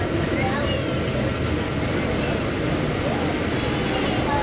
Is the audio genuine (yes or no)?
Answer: yes